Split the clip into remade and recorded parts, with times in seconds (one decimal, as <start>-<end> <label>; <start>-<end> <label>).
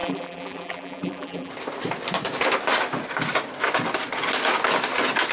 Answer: 0.0-1.5 remade; 1.5-5.3 recorded